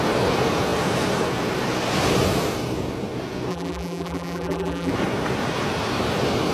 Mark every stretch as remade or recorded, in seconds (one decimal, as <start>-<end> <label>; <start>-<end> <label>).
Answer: 0.0-3.5 recorded; 3.5-4.9 remade; 4.9-6.5 recorded